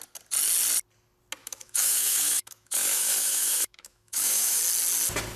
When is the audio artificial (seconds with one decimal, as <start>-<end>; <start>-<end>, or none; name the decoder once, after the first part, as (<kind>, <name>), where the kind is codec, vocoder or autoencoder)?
1.4-4.6 (autoencoder, DAC-VAE)